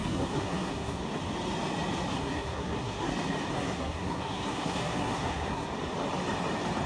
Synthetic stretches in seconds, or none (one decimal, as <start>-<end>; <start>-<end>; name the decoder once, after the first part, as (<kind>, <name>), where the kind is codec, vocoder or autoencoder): 0.0-1.0 (codec, SNAC); 2.1-3.1; 3.5-5.7